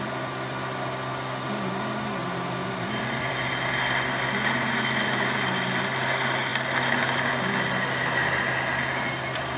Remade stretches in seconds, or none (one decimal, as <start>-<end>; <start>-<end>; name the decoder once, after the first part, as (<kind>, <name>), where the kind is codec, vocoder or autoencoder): 2.6-3.3 (vocoder, BigVGAN v2)